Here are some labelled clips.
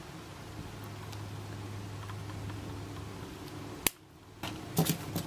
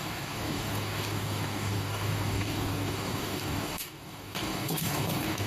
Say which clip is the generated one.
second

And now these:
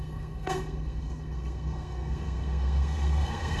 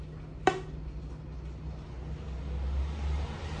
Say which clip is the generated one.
first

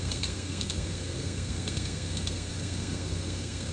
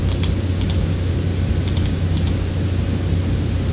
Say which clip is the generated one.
first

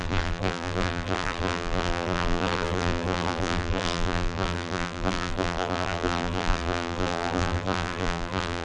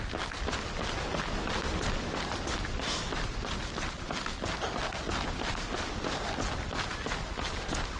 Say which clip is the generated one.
first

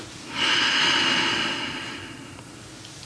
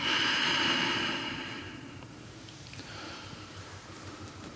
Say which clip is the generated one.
second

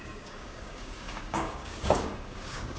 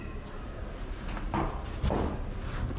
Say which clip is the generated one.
first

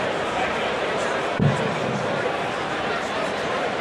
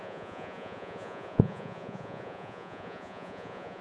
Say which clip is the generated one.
second